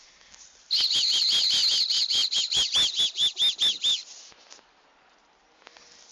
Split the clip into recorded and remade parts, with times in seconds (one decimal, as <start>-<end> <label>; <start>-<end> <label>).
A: 0.0-6.1 recorded